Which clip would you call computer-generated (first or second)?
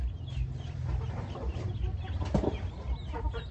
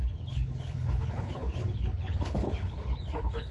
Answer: second